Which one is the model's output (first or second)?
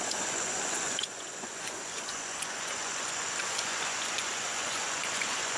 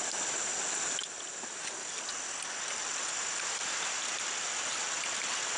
first